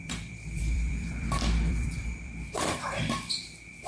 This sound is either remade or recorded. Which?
remade